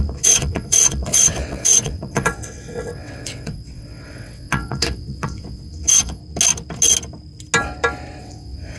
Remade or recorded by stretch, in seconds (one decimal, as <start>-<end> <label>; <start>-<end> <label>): 0.0-6.2 remade; 6.2-8.2 recorded; 8.2-8.8 remade